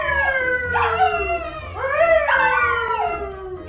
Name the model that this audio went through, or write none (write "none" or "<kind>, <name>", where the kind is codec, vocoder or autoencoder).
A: none